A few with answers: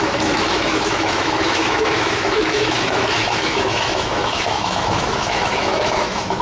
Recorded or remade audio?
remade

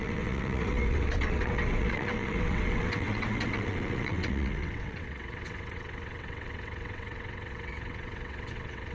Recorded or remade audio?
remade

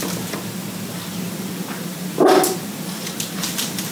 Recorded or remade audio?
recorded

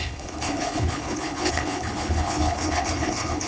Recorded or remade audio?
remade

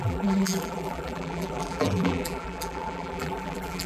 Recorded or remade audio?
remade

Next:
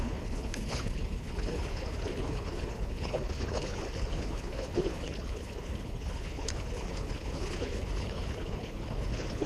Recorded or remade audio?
remade